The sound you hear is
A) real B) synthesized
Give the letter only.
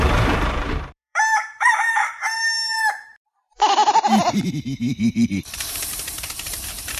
B